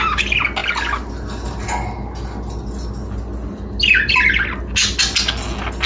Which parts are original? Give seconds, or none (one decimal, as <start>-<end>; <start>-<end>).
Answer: 0.0-5.9